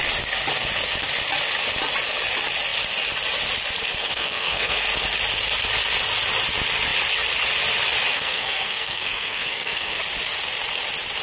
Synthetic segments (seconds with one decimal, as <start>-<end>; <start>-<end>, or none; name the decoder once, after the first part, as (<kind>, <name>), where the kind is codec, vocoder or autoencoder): 4.0-4.8 (codec, SNAC); 8.1-10.0